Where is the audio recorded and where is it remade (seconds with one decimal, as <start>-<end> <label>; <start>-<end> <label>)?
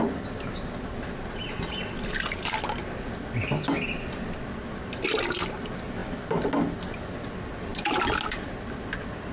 0.0-9.3 recorded